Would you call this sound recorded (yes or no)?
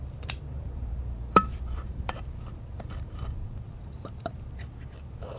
no